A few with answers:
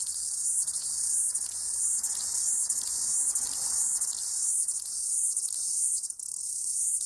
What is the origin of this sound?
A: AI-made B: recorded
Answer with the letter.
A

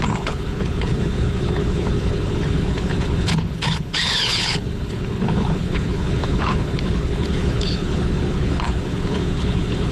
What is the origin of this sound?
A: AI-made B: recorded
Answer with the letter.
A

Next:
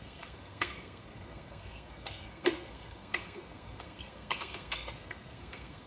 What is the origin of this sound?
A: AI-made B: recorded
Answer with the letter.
A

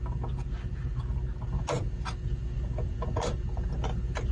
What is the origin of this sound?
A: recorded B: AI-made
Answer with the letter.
A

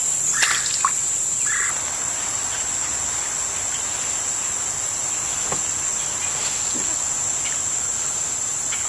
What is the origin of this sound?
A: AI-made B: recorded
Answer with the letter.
B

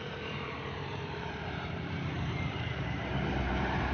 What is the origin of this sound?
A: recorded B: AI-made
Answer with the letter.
B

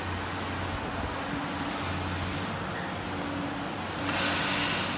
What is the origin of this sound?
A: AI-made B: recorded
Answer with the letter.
B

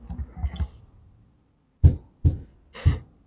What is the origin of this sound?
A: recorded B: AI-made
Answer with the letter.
A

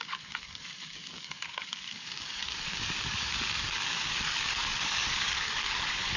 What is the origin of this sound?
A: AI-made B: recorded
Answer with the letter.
A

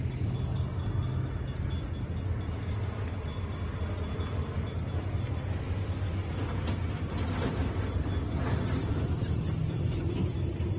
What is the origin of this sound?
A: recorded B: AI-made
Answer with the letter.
A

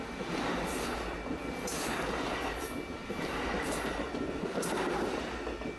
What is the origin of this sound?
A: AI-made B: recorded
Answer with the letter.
B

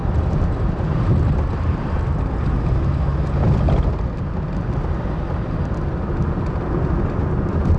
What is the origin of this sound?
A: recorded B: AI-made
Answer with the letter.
A